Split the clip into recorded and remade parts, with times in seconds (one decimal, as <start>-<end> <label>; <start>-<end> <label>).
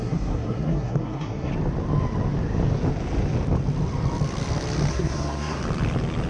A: 0.0-1.5 remade; 1.5-4.9 recorded; 4.9-5.6 remade; 5.6-6.3 recorded